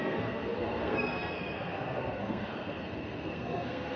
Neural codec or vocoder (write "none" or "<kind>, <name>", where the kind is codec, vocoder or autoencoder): codec, SNAC